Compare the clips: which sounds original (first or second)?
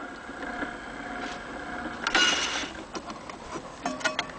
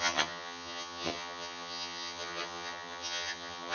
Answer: first